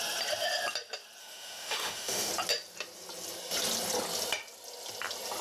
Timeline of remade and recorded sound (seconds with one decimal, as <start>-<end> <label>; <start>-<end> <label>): 0.0-1.2 recorded; 1.2-2.3 remade; 2.3-5.4 recorded